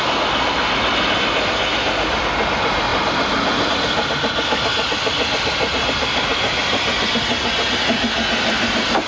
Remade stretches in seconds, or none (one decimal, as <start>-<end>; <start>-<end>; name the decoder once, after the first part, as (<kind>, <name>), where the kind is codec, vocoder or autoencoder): none